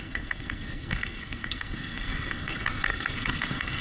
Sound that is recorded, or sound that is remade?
remade